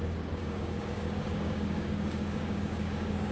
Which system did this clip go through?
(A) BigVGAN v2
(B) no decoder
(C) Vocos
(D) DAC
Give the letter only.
D